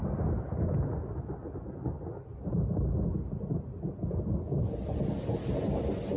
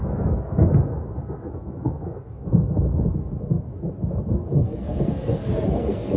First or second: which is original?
first